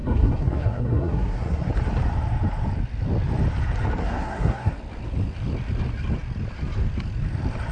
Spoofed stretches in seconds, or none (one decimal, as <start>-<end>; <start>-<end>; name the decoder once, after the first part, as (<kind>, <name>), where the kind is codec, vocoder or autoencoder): 0.0-1.7 (codec, SNAC); 4.0-4.7